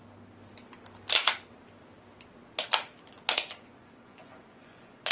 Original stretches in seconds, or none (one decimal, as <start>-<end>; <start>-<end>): 0.0-3.1